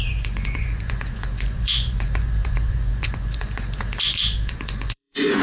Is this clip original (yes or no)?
no